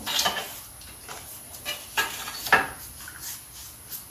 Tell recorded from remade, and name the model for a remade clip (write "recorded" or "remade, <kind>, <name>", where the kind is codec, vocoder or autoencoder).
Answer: recorded